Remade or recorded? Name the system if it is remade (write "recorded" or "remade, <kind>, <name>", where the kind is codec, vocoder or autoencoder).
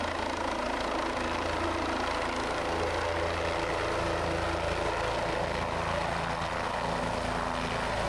recorded